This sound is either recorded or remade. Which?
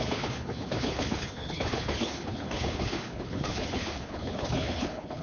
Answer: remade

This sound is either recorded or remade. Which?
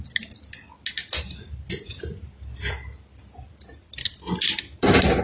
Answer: recorded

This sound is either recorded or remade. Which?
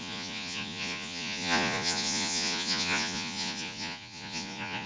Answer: remade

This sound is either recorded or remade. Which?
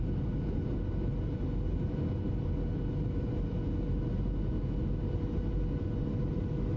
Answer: recorded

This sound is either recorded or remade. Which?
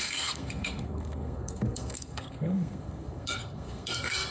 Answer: remade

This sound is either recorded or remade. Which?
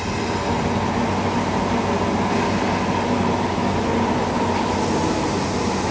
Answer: recorded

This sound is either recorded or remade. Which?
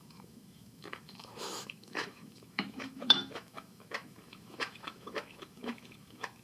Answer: remade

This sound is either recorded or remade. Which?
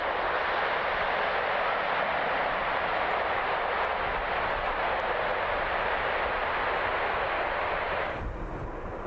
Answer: recorded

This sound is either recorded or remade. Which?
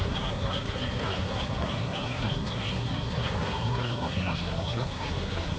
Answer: remade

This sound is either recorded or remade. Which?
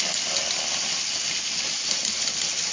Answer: recorded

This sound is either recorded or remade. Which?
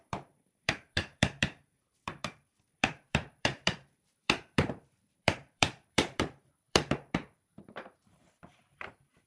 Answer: remade